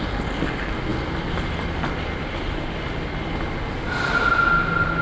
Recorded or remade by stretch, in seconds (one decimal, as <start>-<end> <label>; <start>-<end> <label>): 0.0-5.0 recorded